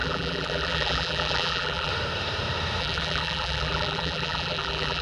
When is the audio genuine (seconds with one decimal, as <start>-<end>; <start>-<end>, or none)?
1.9-2.8